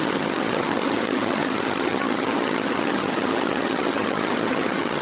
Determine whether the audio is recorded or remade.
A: remade